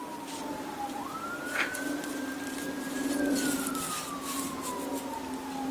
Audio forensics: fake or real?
real